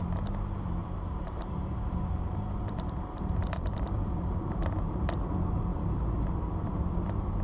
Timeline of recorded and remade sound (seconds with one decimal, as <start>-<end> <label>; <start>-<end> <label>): 0.0-0.8 recorded; 0.8-5.2 remade; 5.2-7.4 recorded